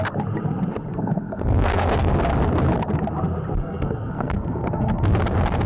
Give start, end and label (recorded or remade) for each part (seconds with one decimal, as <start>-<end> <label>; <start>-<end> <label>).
0.0-0.9 recorded; 0.9-2.1 remade; 2.1-3.6 recorded; 3.6-5.1 remade; 5.1-5.7 recorded